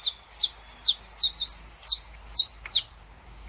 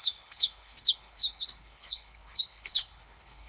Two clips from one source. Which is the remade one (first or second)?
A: second